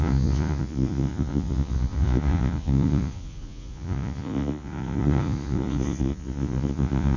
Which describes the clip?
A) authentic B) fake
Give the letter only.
B